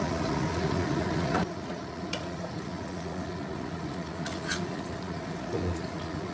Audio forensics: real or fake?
fake